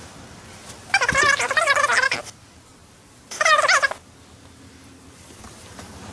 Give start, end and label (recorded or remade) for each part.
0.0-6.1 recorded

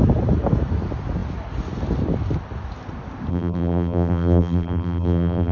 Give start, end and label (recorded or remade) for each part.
0.0-3.3 recorded; 3.3-5.5 remade

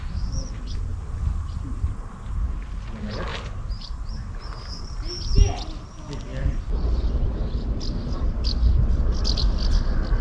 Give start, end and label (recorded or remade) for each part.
0.0-0.9 recorded; 0.9-1.7 remade; 1.7-3.3 recorded; 3.3-4.1 remade; 4.1-10.2 recorded

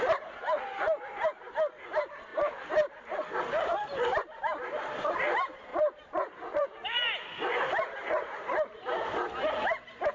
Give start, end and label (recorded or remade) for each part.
0.0-5.7 recorded; 5.7-10.1 remade

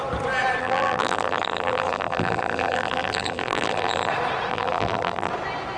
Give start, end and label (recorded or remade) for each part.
0.0-0.6 recorded; 0.6-4.1 remade; 4.1-4.5 recorded; 4.5-5.3 remade; 5.3-5.8 recorded